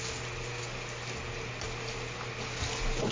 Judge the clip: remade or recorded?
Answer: recorded